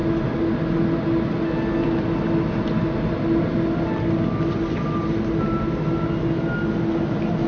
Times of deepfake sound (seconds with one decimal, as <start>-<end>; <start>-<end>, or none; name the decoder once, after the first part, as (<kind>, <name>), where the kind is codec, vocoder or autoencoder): none